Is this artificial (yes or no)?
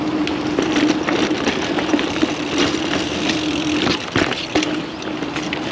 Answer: no